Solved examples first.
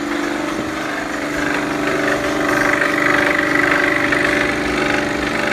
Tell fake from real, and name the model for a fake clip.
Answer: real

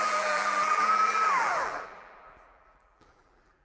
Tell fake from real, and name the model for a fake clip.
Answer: fake, vocoder, BigVGAN v2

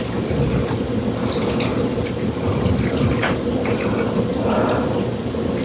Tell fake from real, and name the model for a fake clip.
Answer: real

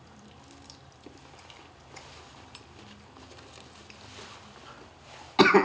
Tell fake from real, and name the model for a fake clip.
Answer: real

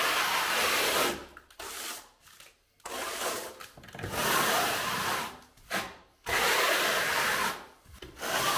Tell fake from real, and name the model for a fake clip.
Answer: real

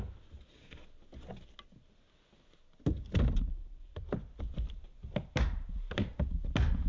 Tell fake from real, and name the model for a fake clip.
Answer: real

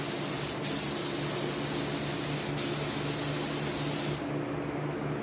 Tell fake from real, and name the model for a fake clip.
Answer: real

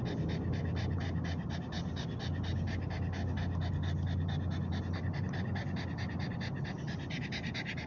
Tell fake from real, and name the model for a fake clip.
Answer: real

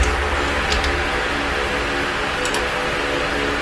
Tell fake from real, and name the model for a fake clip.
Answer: real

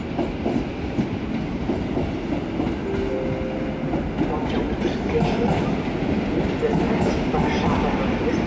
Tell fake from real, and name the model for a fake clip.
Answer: real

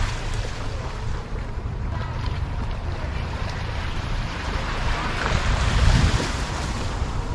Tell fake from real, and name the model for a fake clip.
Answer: fake, vocoder, BigVGAN v2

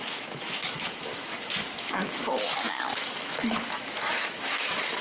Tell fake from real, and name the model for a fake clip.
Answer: fake, autoencoder, DAC-VAE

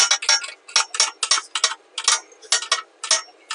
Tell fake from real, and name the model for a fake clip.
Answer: real